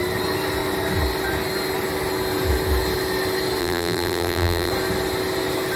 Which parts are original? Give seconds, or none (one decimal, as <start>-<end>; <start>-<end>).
0.0-3.6; 4.7-5.8